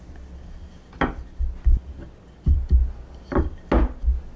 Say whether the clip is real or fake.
real